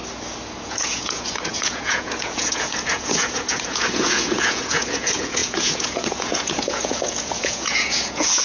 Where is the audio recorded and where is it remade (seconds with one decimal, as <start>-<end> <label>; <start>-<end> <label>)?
0.0-0.6 recorded; 0.6-8.4 remade